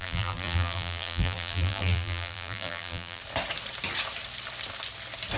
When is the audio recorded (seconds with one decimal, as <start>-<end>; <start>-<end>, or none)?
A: 3.2-5.4